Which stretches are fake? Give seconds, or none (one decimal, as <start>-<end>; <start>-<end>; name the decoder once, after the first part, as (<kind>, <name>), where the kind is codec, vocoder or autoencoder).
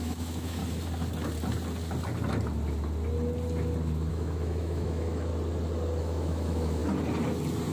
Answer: 0.0-0.6 (autoencoder, DAC-VAE); 4.1-5.3; 6.0-6.8